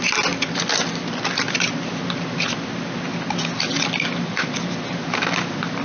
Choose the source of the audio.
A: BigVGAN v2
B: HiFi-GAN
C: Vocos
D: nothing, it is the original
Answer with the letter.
D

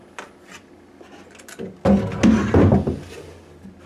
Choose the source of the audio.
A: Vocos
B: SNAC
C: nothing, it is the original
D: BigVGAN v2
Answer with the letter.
C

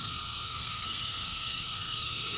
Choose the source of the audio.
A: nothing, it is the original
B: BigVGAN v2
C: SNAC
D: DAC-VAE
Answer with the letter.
C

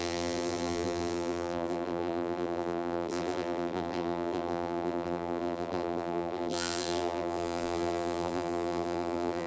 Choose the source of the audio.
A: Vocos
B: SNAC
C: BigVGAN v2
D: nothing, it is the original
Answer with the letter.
C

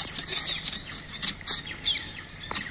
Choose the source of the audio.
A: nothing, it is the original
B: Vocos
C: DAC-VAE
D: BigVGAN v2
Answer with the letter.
A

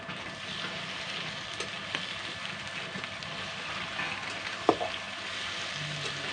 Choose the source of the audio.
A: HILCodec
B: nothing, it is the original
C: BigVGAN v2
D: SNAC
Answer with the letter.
B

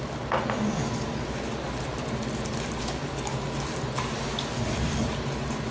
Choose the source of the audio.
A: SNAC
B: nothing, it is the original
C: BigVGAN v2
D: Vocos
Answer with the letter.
B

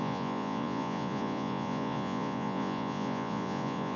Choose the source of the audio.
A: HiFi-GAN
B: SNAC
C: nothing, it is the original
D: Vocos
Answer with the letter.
D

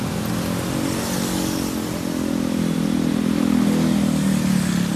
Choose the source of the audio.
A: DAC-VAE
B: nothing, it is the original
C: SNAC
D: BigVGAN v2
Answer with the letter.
B